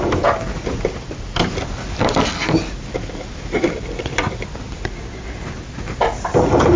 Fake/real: real